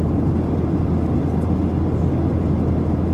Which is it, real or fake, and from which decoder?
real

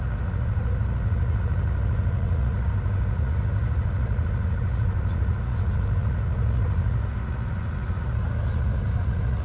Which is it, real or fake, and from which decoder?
fake, vocoder, Vocos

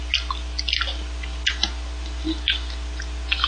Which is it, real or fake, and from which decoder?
real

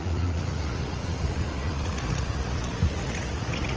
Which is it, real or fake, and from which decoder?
fake, vocoder, Vocos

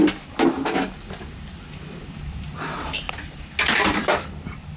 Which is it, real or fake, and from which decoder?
real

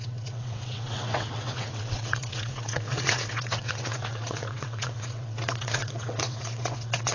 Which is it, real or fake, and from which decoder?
fake, vocoder, WaveNeXt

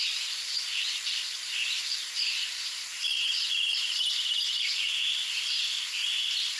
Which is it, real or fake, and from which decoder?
fake, vocoder, BigVGAN v2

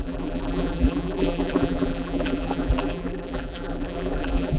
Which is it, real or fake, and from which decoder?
fake, vocoder, BigVGAN v2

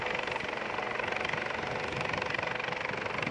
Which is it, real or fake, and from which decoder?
real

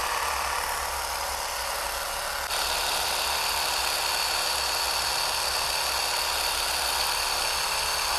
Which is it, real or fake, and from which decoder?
real